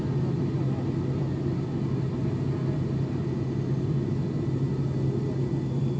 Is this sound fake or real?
real